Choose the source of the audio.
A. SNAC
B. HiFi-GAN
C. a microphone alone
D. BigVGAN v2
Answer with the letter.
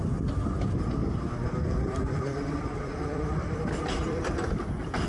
D